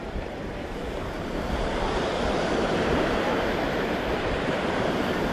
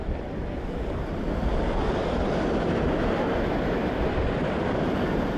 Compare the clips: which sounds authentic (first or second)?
second